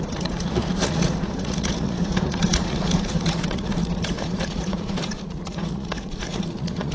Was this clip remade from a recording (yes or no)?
yes